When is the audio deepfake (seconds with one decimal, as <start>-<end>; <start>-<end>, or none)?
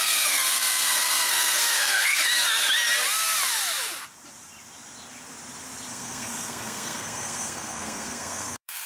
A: 0.0-2.2; 5.9-8.9